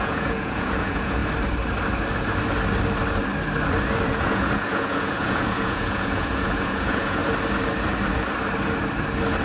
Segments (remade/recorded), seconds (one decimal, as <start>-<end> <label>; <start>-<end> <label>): 0.0-1.2 remade; 1.2-4.1 recorded; 4.1-7.2 remade; 7.2-9.4 recorded